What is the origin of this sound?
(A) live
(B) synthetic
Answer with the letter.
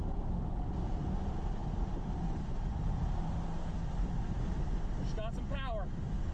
A